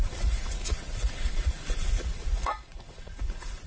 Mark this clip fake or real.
fake